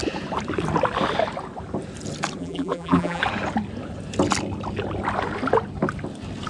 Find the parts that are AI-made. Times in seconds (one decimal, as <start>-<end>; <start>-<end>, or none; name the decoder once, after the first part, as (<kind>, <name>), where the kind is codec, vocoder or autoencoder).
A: 2.4-3.2 (vocoder, BigVGAN v2)